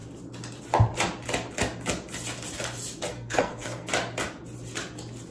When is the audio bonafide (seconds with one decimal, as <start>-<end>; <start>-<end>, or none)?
0.0-3.1; 3.9-5.3